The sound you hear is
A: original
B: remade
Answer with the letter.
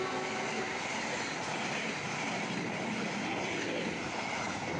A